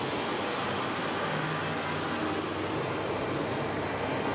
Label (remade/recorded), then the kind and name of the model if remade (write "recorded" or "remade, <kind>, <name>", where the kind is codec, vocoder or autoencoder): recorded